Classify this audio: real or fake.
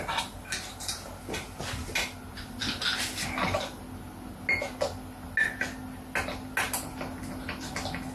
real